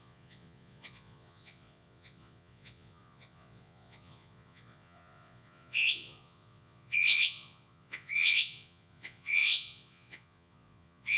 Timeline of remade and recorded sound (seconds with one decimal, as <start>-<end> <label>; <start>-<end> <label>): 0.0-11.2 remade